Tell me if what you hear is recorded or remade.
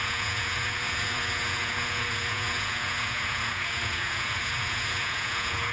remade